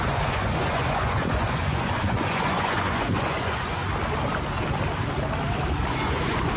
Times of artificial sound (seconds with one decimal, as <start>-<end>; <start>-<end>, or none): 0.0-3.8; 5.9-6.6